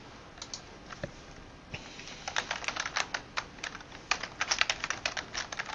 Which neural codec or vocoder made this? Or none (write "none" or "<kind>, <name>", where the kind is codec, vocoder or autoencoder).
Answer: none